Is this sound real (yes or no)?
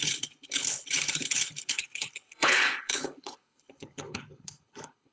no